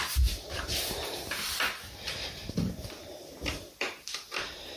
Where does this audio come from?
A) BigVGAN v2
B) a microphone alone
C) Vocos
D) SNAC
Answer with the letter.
A